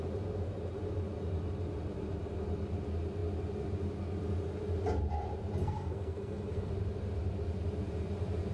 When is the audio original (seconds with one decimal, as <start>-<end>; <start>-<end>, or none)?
0.0-5.6; 6.7-8.5